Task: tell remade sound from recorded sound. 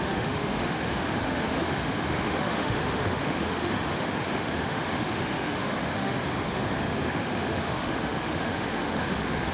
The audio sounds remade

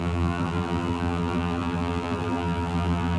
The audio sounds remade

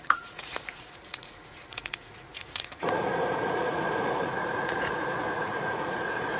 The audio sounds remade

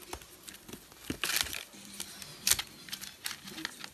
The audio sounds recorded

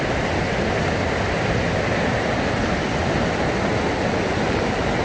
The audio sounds recorded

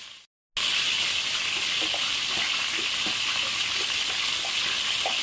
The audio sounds recorded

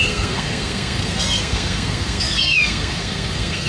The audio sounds remade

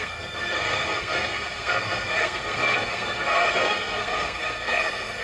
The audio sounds remade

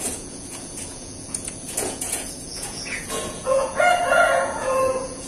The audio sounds remade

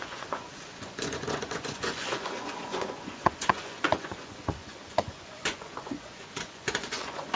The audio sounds remade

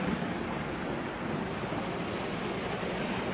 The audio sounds recorded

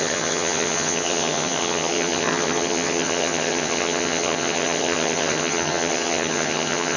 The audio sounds remade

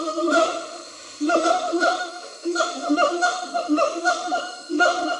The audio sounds remade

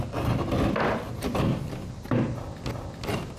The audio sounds recorded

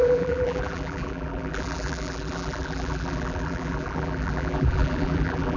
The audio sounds remade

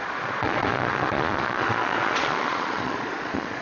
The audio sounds remade